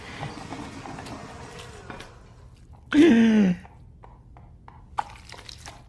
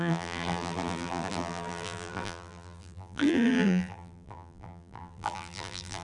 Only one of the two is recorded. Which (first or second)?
first